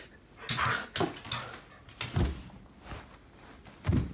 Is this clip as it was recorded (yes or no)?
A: yes